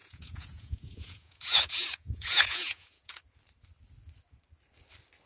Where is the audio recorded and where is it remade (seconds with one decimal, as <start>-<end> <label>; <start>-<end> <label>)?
0.0-3.2 remade; 3.2-5.3 recorded